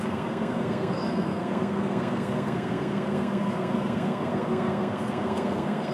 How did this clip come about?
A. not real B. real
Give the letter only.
A